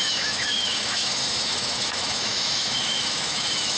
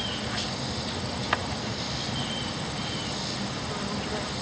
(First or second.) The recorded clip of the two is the second